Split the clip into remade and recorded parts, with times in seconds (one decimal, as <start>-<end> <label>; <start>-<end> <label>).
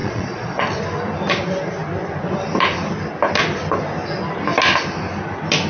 0.0-0.6 remade; 0.6-5.7 recorded